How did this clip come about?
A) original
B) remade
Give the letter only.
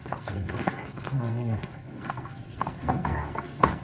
B